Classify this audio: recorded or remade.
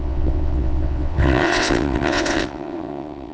remade